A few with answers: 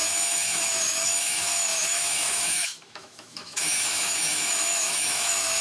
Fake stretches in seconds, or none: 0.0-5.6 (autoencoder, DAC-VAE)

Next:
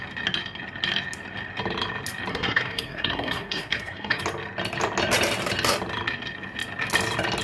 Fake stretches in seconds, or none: 2.3-4.2 (codec, SNAC)

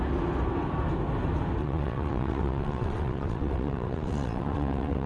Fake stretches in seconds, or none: 1.6-5.1 (vocoder, WaveNeXt)

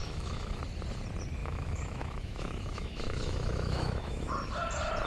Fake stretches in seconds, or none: 0.0-0.6 (autoencoder, DAC-VAE); 1.4-4.3

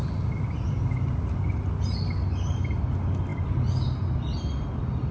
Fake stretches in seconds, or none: none

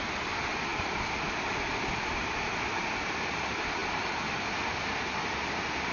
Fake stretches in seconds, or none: 0.7-1.8 (vocoder, BigVGAN v2)

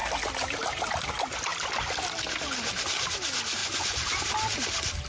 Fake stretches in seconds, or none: 3.6-4.2 (vocoder, Vocos)

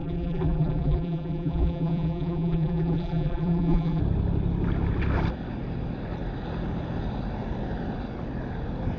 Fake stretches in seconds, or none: 0.0-4.0 (vocoder, BigVGAN v2)